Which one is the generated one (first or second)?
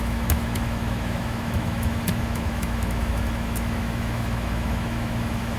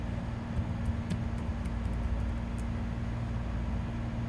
first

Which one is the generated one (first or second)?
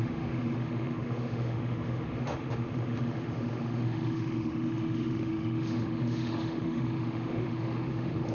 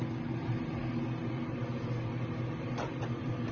first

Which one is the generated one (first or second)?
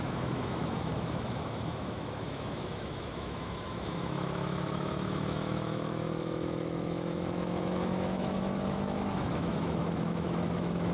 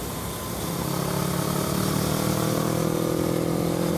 first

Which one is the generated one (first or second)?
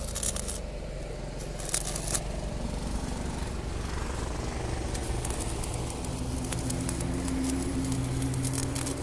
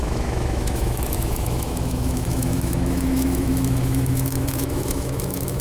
second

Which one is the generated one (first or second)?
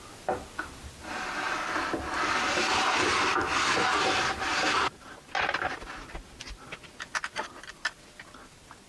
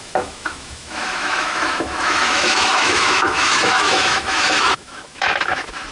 second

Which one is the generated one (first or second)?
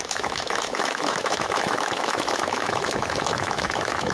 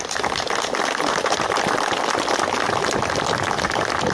first